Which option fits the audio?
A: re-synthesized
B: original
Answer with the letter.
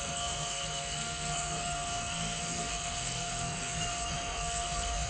A